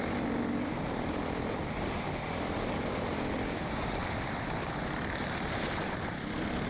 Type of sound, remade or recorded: remade